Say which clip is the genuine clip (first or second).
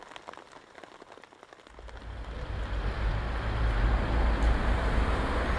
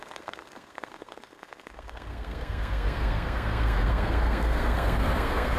first